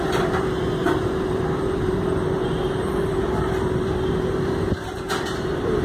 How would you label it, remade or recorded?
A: remade